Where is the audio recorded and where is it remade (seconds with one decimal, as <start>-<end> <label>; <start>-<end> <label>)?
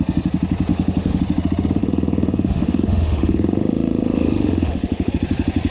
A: 0.0-0.7 recorded; 0.7-1.2 remade; 1.2-1.8 recorded; 1.8-5.1 remade; 5.1-5.7 recorded